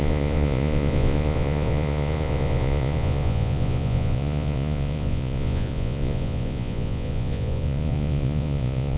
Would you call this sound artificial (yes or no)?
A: yes